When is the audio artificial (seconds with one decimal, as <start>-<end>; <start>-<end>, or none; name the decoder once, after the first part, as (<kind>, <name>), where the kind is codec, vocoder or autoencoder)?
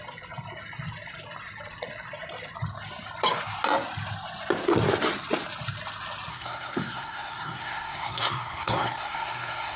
6.3-9.8 (codec, SNAC)